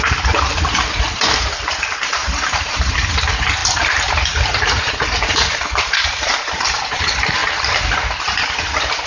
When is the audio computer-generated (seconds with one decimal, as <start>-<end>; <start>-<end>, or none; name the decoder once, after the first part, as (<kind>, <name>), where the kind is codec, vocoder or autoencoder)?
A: 2.2-3.1 (vocoder, BigVGAN v2); 3.6-7.0

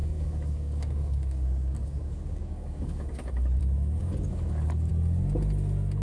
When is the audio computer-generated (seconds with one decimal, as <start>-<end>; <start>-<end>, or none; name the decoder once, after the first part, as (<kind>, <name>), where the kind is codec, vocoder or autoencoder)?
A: 0.0-3.6 (codec, DAC); 4.0-4.9